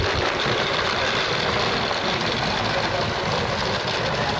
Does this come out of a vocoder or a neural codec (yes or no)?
no